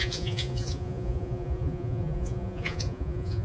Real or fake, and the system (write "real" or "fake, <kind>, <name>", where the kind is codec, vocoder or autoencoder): fake, vocoder, Vocos